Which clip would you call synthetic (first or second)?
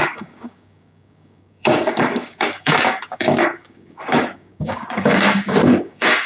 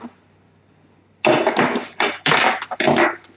first